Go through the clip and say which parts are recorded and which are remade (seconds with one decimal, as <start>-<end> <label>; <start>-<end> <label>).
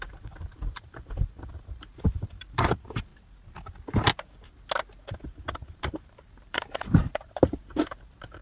0.0-3.1 remade; 3.1-5.5 recorded; 5.5-8.4 remade